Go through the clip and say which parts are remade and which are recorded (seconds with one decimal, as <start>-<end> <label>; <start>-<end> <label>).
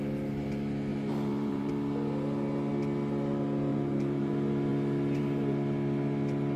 0.0-0.9 recorded; 0.9-1.7 remade; 1.7-3.7 recorded; 3.7-4.3 remade; 4.3-6.6 recorded